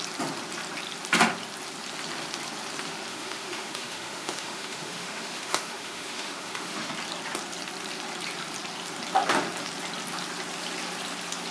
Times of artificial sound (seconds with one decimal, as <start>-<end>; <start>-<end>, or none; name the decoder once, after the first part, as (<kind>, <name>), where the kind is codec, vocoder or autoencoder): 3.1-6.9 (autoencoder, DAC-VAE)